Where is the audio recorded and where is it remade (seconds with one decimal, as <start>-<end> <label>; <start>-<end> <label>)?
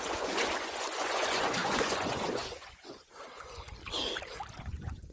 0.0-3.8 remade; 3.8-4.5 recorded; 4.5-5.1 remade